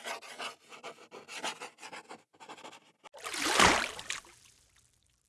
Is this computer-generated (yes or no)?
no